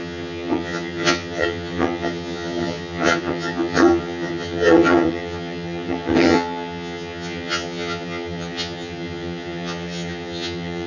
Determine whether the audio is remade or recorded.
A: remade